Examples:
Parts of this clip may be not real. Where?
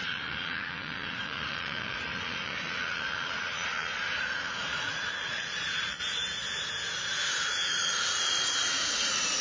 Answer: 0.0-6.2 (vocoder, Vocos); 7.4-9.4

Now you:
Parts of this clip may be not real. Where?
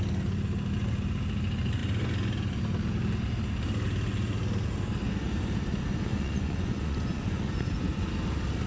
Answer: 6.1-8.1 (vocoder, Vocos)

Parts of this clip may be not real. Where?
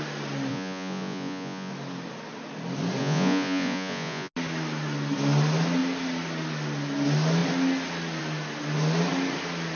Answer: 0.5-1.7 (vocoder, Vocos); 3.0-4.3